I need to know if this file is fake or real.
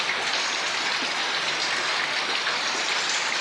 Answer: fake